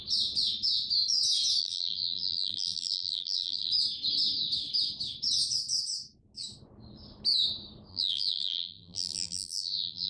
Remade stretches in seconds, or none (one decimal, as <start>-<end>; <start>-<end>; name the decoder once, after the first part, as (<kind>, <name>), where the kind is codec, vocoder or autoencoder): 1.6-3.7 (vocoder, BigVGAN v2); 7.9-10.1